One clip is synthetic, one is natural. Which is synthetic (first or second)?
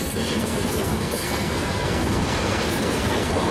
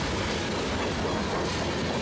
first